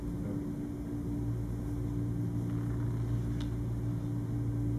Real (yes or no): yes